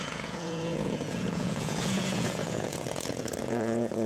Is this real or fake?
fake